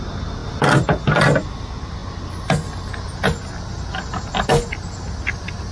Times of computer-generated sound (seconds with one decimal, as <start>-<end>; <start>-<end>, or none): none